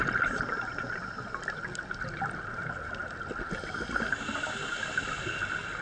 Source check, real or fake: real